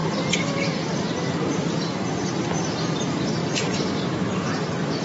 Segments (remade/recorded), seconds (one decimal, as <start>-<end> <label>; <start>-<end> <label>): 0.0-3.0 remade; 3.0-3.4 recorded; 3.4-4.0 remade; 4.0-5.0 recorded